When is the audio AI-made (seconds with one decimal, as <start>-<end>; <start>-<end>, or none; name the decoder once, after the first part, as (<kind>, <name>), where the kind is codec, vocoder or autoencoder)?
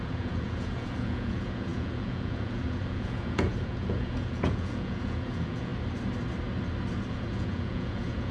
0.0-5.7 (vocoder, Vocos); 7.1-8.3